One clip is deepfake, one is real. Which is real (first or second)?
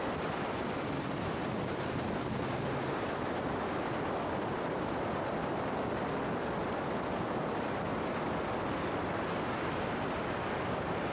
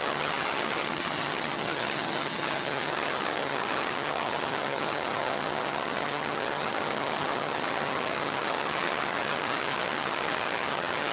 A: first